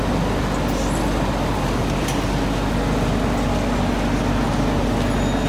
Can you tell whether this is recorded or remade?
recorded